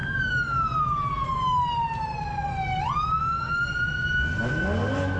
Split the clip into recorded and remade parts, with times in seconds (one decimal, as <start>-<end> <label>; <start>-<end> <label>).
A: 0.0-5.2 recorded